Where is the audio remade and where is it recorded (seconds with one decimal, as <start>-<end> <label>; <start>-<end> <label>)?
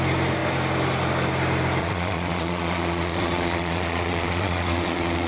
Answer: 0.0-1.8 recorded; 1.8-5.3 remade